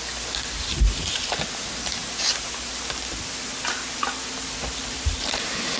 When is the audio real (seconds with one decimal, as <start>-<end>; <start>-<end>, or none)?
0.0-2.0